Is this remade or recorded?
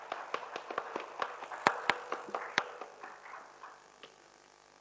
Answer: recorded